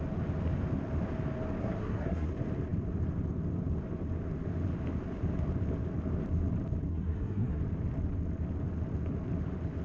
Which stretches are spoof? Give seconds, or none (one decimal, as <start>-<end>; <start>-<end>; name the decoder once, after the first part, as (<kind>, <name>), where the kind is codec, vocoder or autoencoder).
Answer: 1.6-2.3 (codec, SNAC); 6.9-7.6